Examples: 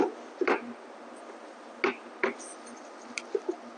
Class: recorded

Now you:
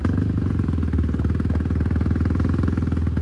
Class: recorded